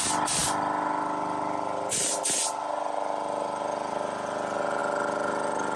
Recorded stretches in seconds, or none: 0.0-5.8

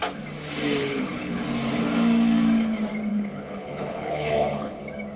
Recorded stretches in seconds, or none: 0.0-0.8; 1.4-3.1; 4.8-5.2

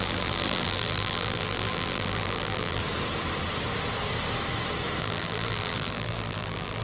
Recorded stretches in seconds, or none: 2.8-5.0

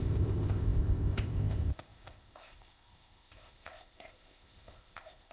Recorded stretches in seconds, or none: none

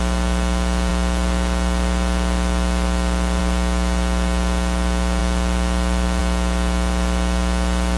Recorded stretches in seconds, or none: 0.0-8.0

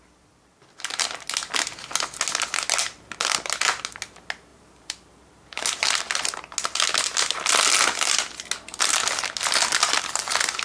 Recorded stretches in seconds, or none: 0.0-4.5; 6.0-10.6